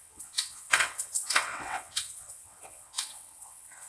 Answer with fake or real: fake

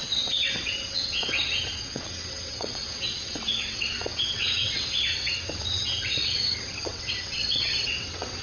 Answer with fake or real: fake